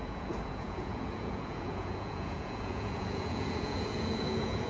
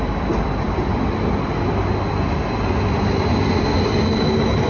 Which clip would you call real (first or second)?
second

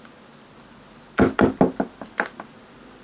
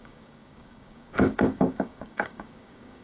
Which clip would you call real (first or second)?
first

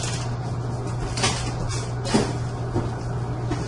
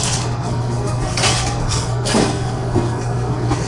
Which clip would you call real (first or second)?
first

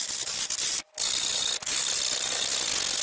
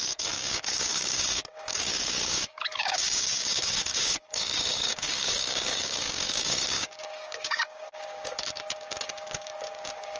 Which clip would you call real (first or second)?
first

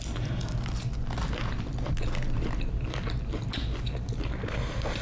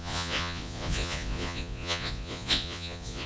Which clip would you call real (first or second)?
first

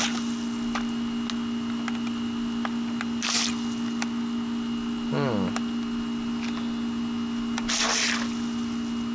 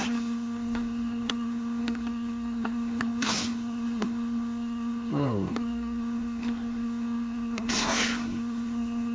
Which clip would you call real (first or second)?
first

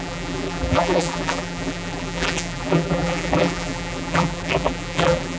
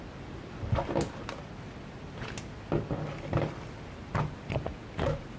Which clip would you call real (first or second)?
second